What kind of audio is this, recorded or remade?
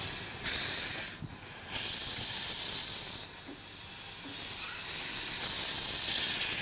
recorded